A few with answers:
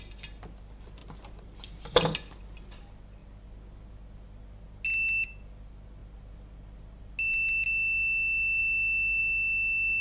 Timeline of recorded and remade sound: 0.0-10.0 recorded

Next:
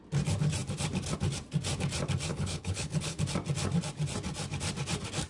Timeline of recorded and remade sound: 0.0-2.3 recorded; 2.3-3.2 remade; 3.2-5.3 recorded

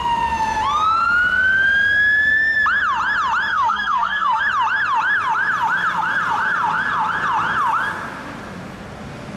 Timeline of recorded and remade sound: 0.0-3.5 recorded; 3.5-4.4 remade; 4.4-9.4 recorded

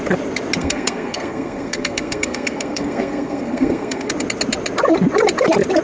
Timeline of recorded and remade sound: 0.0-0.6 recorded; 0.6-4.1 remade; 4.1-5.8 recorded

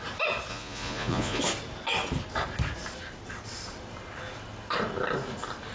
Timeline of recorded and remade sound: 0.0-0.5 recorded; 0.5-1.4 remade; 1.4-5.7 recorded

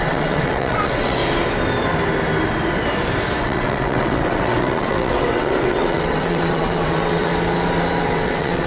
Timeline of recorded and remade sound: 0.0-1.2 remade; 1.2-3.4 recorded; 3.4-7.3 remade; 7.3-8.0 recorded; 8.0-8.7 remade

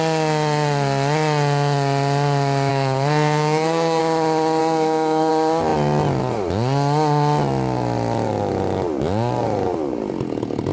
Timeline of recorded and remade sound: 0.0-2.7 recorded; 2.7-4.0 remade; 4.0-4.6 recorded; 4.6-5.3 remade; 5.3-10.7 recorded

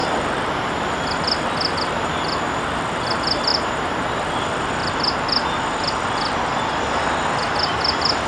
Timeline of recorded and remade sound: 0.0-3.5 recorded; 3.5-4.0 remade; 4.0-8.3 recorded